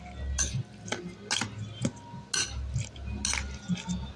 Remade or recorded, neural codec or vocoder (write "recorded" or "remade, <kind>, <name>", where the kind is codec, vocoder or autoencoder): recorded